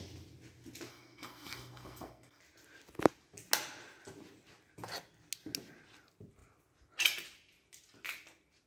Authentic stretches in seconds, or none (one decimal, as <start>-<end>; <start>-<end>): 0.0-0.9; 2.4-8.7